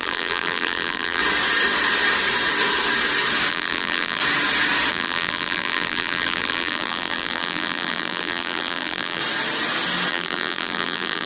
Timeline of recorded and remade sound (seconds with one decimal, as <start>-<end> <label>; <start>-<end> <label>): 0.0-1.2 remade; 1.2-3.5 recorded; 3.5-4.2 remade; 4.2-4.9 recorded; 4.9-9.2 remade; 9.2-10.1 recorded; 10.1-11.3 remade